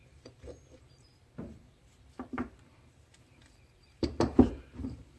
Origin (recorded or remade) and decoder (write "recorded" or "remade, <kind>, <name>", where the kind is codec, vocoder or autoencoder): remade, vocoder, BigVGAN v2